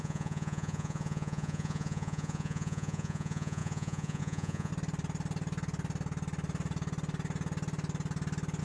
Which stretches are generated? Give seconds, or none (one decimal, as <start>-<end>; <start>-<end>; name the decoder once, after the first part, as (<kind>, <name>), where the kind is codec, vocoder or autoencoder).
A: 0.0-4.7 (vocoder, Vocos)